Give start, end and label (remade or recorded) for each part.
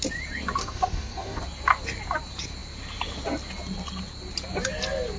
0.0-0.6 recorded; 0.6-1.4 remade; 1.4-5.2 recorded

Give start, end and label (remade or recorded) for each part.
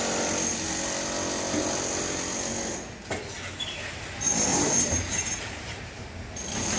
0.0-4.5 recorded; 4.5-6.3 remade; 6.3-6.8 recorded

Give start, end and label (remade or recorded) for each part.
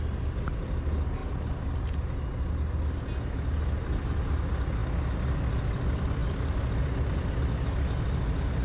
0.0-8.6 recorded